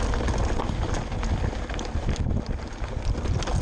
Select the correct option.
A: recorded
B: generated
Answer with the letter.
A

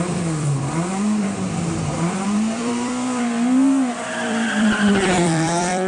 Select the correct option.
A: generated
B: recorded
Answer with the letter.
A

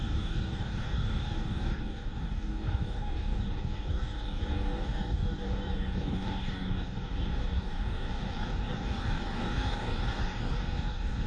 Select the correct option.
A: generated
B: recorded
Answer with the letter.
A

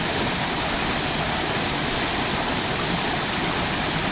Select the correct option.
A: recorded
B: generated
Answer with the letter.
A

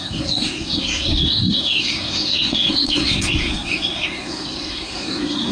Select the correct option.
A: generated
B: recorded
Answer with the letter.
A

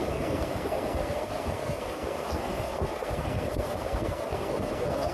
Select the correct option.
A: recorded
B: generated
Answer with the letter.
B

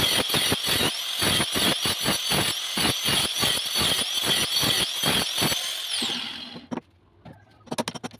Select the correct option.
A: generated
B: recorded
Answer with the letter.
B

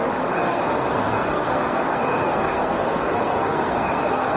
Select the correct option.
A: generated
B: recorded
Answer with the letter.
A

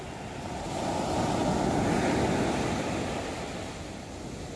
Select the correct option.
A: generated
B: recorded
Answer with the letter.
B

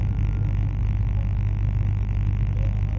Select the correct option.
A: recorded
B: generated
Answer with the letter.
A